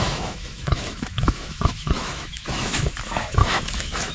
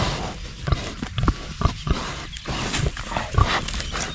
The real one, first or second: second